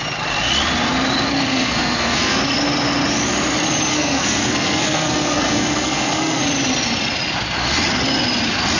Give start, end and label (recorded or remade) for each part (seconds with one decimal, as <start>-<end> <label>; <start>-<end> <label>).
0.0-1.5 recorded; 1.5-2.4 remade; 2.4-3.9 recorded; 3.9-6.4 remade; 6.4-8.8 recorded